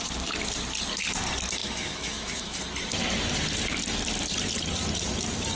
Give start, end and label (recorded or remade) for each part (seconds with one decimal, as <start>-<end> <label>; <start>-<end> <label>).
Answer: 0.0-1.6 recorded; 1.6-2.6 remade; 2.6-5.6 recorded